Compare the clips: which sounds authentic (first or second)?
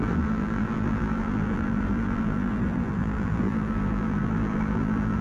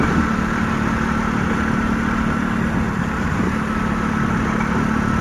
second